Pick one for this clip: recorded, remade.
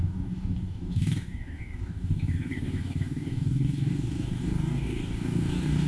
remade